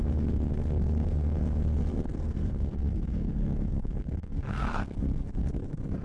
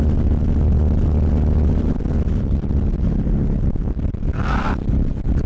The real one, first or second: second